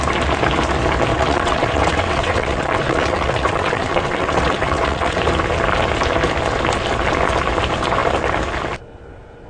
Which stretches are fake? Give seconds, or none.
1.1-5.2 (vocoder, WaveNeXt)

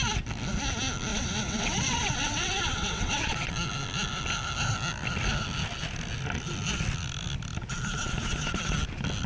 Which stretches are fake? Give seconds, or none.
1.1-3.5 (vocoder, WaveNeXt)

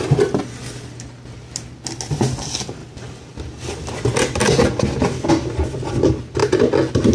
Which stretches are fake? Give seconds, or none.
none

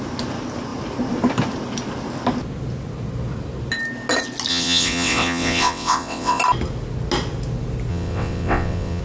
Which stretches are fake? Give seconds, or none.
4.5-6.4 (vocoder, WaveNeXt); 7.9-9.0

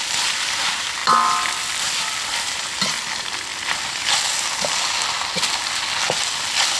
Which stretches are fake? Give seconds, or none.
none

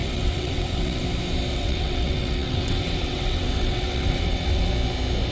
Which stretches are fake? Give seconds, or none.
0.0-1.0 (vocoder, WaveNeXt); 1.5-4.7

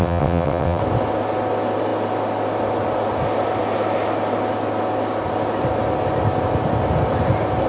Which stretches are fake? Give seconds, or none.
0.0-0.8 (vocoder, WaveNeXt)

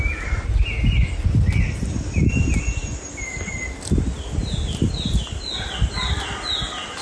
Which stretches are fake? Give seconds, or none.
none